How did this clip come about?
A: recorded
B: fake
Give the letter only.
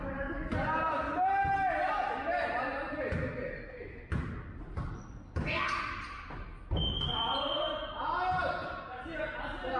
A